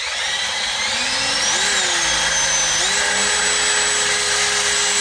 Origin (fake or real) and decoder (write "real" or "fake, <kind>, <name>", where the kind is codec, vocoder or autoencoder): real